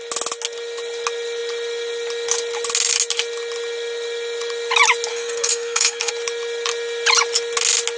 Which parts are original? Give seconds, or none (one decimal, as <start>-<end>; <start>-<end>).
0.0-5.1; 6.1-8.0